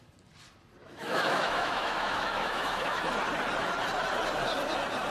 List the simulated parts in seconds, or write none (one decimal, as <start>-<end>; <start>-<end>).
0.8-3.0